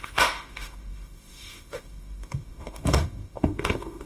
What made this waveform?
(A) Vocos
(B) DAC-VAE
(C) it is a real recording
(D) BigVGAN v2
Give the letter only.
B